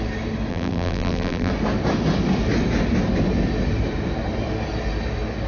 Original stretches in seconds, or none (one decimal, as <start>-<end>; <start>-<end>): 0.0-0.5; 1.5-5.5